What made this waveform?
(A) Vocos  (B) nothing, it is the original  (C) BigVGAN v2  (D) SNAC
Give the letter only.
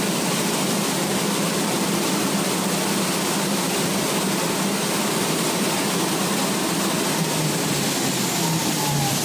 B